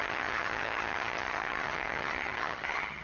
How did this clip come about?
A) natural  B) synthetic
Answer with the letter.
B